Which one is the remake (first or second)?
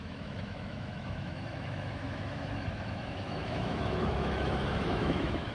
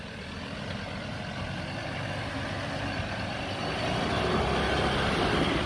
first